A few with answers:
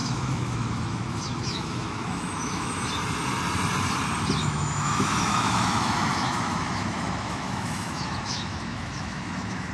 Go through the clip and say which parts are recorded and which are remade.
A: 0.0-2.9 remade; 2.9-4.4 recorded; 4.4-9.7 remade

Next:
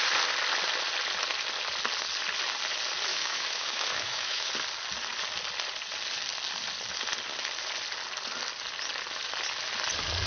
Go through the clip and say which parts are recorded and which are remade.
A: 0.0-3.1 recorded; 3.1-4.5 remade; 4.5-10.3 recorded

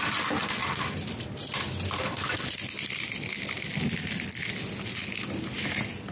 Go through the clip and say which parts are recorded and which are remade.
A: 0.0-6.1 recorded

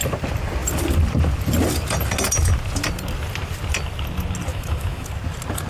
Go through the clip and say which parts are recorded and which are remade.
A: 0.0-4.5 recorded; 4.5-5.1 remade; 5.1-5.7 recorded

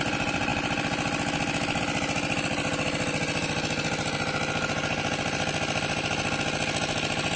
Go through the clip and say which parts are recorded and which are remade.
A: 0.0-7.4 recorded